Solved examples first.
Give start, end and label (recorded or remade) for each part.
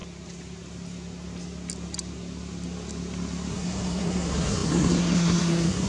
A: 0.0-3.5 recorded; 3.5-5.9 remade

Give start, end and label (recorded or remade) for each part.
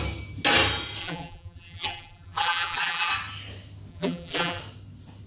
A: 0.0-1.0 recorded; 1.0-3.1 remade; 3.1-3.9 recorded; 3.9-4.6 remade; 4.6-5.3 recorded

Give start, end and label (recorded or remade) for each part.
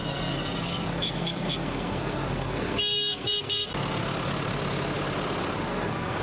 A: 0.0-3.7 remade; 3.7-5.7 recorded; 5.7-6.2 remade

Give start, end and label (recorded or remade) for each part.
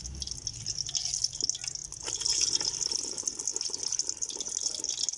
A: 0.0-5.2 recorded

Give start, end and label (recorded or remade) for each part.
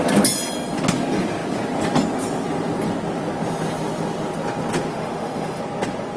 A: 0.0-4.9 recorded; 4.9-5.6 remade; 5.6-6.2 recorded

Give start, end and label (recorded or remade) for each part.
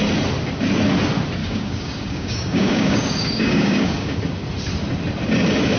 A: 0.0-1.4 recorded; 1.4-4.2 remade; 4.2-5.8 recorded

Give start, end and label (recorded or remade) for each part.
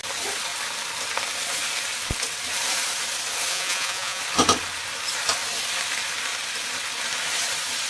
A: 0.0-3.5 recorded; 3.5-4.2 remade; 4.2-7.9 recorded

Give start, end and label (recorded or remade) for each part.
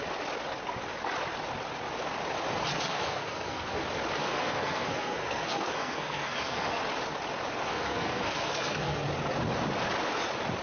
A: 0.0-2.7 recorded; 2.7-3.8 remade; 3.8-4.2 recorded; 4.2-6.8 remade; 6.8-7.7 recorded; 7.7-9.0 remade; 9.0-10.6 recorded